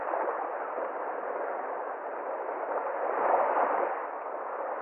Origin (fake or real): fake